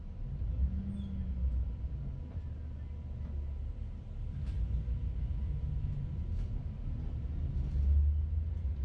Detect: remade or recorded recorded